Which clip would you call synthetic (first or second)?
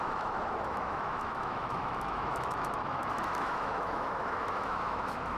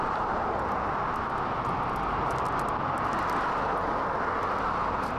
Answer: first